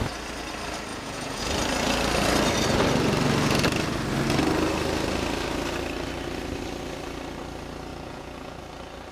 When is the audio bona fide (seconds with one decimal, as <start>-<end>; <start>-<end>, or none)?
0.0-0.9; 1.5-7.9; 8.6-9.1